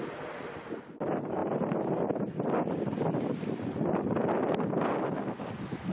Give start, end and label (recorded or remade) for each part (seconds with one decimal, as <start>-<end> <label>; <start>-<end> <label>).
0.0-5.9 recorded